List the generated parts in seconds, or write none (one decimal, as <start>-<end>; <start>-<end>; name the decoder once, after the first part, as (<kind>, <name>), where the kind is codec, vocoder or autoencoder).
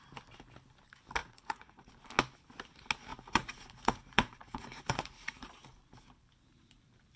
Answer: 1.2-1.9 (vocoder, Vocos); 3.1-5.5